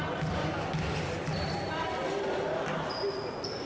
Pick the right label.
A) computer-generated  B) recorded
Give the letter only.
B